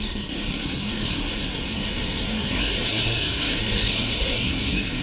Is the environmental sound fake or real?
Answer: fake